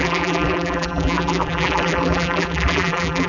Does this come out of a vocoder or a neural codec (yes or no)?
yes